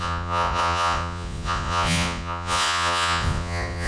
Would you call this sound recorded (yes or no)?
no